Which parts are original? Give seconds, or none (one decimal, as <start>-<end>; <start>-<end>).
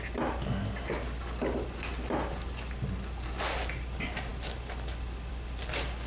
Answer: 0.0-6.1